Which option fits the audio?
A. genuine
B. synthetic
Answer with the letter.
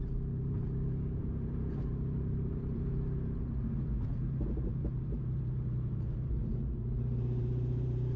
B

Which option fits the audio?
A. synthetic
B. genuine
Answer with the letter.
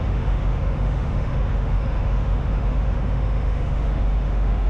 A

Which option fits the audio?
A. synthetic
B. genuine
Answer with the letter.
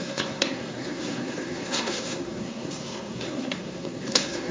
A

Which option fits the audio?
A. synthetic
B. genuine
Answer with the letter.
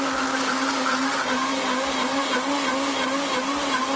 B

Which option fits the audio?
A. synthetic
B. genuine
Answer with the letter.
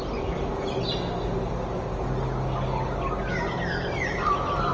B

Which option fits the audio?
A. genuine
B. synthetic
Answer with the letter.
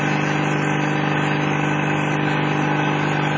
A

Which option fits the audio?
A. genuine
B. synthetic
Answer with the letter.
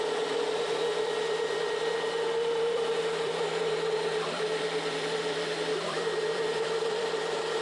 B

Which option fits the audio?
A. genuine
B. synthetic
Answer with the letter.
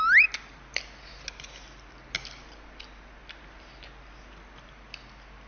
A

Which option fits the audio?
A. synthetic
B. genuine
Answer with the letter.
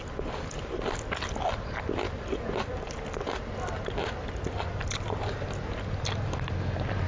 B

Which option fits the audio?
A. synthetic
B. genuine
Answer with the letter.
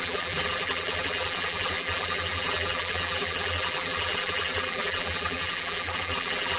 A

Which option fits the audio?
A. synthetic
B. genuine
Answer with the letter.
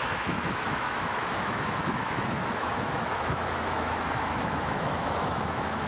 A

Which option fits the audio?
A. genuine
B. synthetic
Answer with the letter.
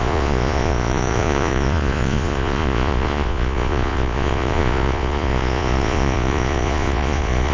B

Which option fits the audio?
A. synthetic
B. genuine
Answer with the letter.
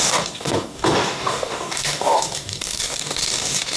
A